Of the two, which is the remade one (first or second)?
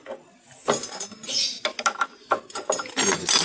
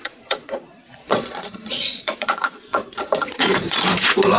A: second